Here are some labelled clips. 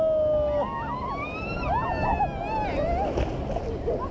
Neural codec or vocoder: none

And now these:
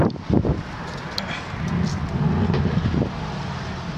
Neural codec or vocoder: none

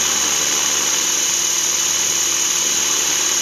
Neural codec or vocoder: vocoder, BigVGAN v2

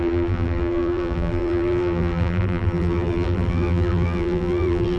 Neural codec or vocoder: vocoder, BigVGAN v2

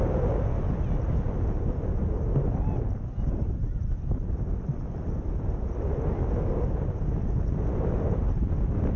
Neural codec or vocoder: none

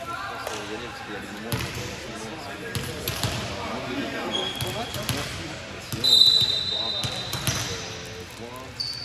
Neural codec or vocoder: none